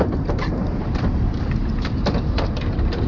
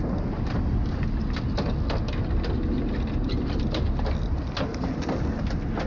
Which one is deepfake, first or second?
first